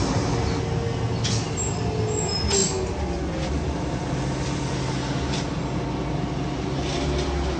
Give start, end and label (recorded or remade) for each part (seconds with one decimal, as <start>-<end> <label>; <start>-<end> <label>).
0.0-7.6 recorded